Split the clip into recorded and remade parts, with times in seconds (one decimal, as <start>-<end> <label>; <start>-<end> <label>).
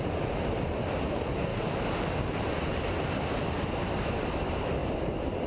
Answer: 0.0-5.5 recorded